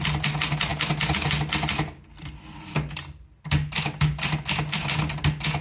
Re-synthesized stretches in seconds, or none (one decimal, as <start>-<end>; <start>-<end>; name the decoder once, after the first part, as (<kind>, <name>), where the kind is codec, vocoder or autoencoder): none